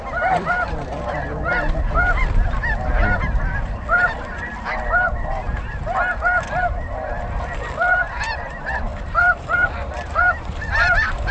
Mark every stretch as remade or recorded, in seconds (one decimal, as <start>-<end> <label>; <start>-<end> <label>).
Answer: 0.0-11.3 remade

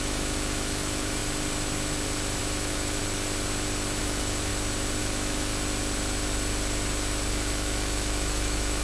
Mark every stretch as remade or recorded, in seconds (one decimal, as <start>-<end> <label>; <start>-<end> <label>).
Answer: 0.0-1.2 remade; 1.2-2.4 recorded; 2.4-3.0 remade; 3.0-4.0 recorded; 4.0-4.5 remade; 4.5-5.0 recorded; 5.0-5.5 remade; 5.5-7.3 recorded; 7.3-8.8 remade